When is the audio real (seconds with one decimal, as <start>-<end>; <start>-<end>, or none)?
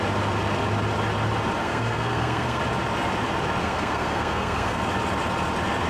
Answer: 0.0-1.6; 2.6-3.6; 4.8-5.9